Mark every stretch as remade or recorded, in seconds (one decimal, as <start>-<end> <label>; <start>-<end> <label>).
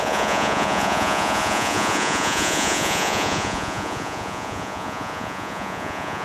0.0-6.2 remade